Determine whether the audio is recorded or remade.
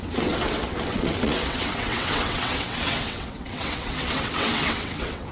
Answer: remade